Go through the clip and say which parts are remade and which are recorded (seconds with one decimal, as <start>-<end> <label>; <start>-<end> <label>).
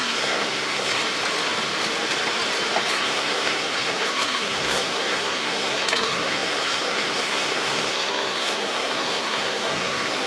0.0-1.0 remade; 1.0-2.9 recorded; 2.9-10.3 remade